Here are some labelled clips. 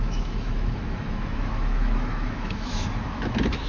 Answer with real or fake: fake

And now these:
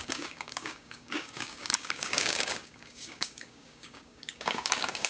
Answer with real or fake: fake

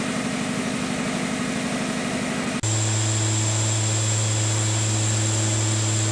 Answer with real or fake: real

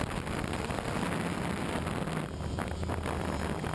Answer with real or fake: real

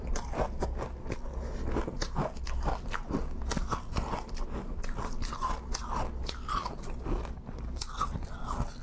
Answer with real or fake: real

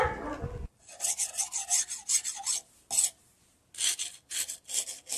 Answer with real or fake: real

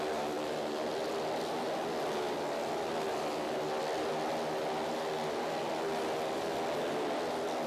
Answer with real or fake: real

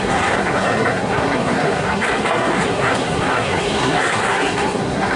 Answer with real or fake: fake